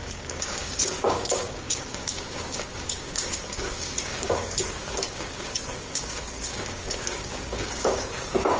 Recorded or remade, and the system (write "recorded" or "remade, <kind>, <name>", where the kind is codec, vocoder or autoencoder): remade, codec, DAC